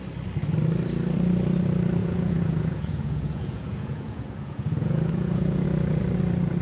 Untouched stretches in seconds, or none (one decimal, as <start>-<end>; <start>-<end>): 0.0-2.0; 6.0-6.6